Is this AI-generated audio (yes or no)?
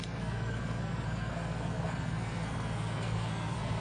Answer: yes